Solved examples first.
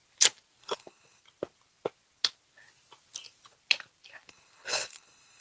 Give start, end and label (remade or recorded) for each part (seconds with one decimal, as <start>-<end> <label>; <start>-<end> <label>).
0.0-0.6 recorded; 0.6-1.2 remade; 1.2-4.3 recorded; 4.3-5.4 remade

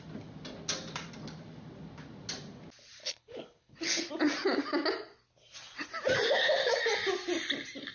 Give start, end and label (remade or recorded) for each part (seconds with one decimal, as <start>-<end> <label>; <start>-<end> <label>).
0.0-3.0 recorded; 3.0-4.1 remade; 4.1-7.9 recorded

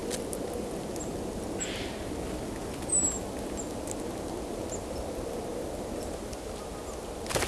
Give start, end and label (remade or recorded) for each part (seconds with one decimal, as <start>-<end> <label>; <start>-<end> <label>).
0.0-7.5 recorded

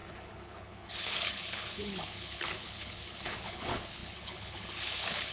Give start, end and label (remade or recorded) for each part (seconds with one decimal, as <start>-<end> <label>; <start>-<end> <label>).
0.0-5.3 remade